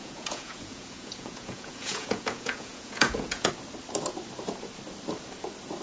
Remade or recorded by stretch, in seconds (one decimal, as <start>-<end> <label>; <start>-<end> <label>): 0.0-3.5 remade; 3.5-5.8 recorded